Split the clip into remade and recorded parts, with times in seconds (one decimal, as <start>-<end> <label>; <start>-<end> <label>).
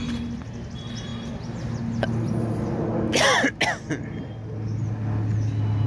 0.0-5.9 recorded